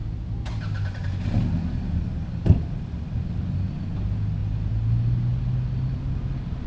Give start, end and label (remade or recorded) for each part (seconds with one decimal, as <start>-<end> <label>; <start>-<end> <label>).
0.0-6.7 recorded